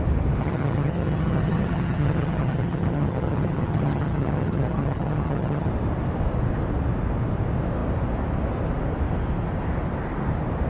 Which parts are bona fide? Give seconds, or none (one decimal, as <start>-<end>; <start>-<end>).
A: 0.0-0.4; 5.7-10.7